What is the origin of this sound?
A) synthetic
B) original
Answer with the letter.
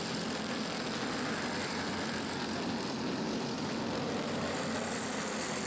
B